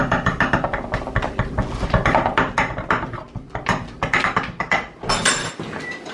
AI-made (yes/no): no